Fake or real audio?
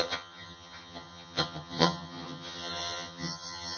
fake